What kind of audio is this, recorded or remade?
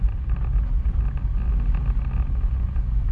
recorded